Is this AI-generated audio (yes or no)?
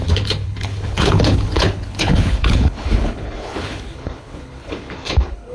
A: yes